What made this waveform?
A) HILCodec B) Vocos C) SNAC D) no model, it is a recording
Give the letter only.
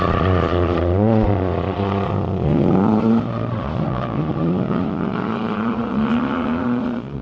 B